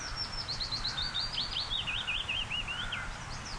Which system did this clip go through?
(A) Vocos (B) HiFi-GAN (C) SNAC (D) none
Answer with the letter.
D